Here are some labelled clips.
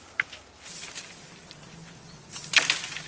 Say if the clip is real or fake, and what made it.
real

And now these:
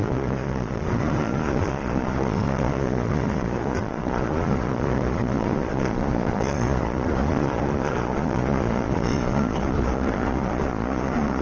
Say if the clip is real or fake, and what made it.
fake, vocoder, Vocos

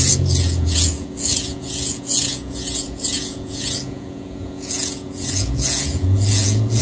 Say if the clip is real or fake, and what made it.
fake, vocoder, Vocos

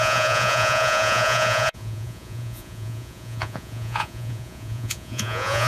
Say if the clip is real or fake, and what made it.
fake, vocoder, Vocos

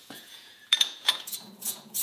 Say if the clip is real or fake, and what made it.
fake, vocoder, Vocos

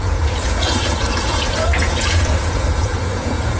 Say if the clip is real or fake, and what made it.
fake, vocoder, Vocos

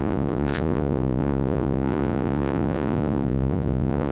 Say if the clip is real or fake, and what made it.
fake, vocoder, Vocos